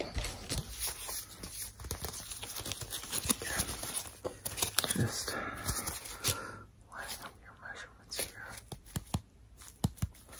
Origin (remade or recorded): recorded